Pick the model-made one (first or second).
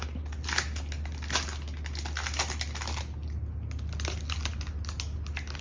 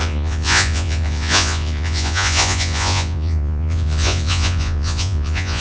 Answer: second